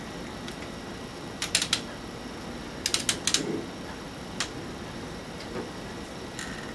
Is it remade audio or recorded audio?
recorded